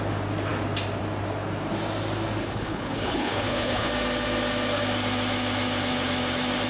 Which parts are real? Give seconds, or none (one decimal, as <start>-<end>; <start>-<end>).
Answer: 0.0-2.4; 3.9-6.7